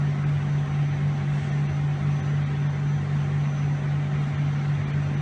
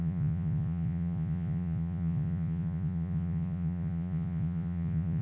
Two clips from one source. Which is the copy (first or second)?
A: second